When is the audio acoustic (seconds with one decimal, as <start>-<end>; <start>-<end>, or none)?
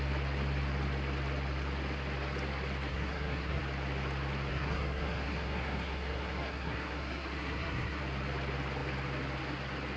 0.0-2.9; 3.6-4.5; 8.0-10.0